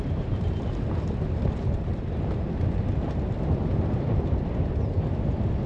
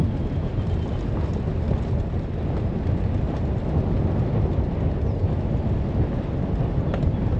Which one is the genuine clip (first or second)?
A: second